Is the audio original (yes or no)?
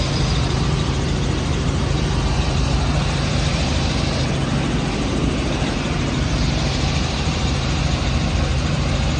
no